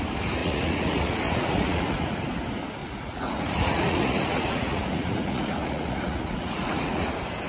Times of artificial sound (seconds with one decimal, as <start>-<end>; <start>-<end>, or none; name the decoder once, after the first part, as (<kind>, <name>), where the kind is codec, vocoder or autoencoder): 0.4-2.2 (vocoder, Vocos); 2.8-7.1